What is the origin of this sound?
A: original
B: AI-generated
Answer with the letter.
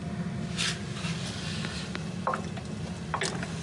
A